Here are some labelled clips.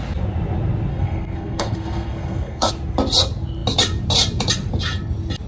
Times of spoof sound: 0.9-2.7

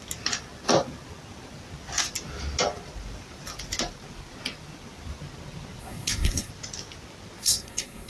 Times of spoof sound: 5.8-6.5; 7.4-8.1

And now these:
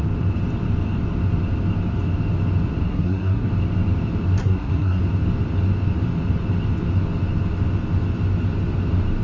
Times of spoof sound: 2.9-3.5; 4.4-5.0

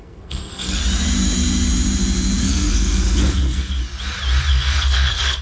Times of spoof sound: 0.0-0.8; 2.4-3.8; 4.5-5.4